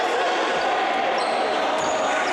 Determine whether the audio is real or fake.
real